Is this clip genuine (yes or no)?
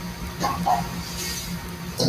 yes